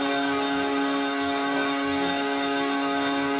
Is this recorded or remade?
remade